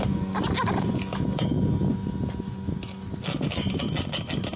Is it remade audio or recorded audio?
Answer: recorded